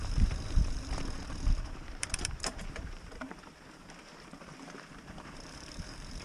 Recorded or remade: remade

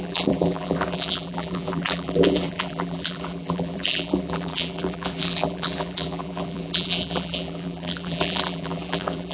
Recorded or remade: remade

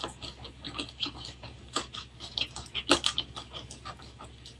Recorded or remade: remade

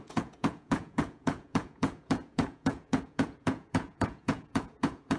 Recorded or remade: remade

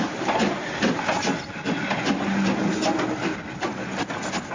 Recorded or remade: recorded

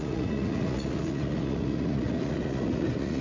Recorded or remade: remade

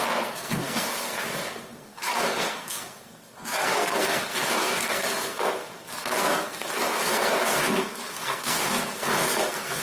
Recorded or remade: remade